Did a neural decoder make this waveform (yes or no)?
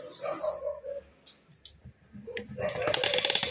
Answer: no